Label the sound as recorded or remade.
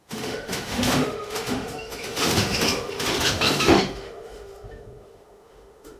remade